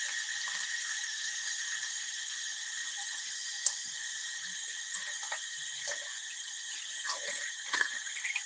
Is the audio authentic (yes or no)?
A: yes